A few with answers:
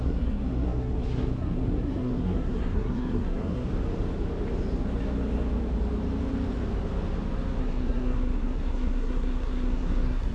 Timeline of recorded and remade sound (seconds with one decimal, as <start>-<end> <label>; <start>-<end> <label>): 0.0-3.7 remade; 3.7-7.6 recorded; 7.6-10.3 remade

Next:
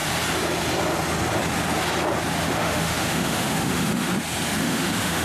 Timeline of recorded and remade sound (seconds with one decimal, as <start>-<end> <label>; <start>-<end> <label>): 0.0-2.4 recorded; 2.4-4.1 remade; 4.1-4.6 recorded; 4.6-5.2 remade

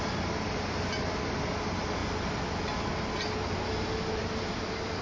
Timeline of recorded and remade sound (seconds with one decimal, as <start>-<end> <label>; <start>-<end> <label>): 0.0-5.0 recorded

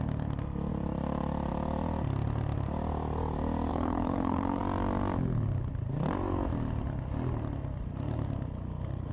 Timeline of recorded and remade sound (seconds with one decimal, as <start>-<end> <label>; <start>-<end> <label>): 0.0-3.7 recorded; 3.7-4.6 remade; 4.6-9.1 recorded